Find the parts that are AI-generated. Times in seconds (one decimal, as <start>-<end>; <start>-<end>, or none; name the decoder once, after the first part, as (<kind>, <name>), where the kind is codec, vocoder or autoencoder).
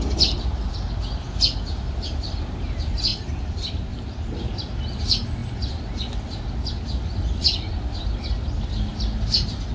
none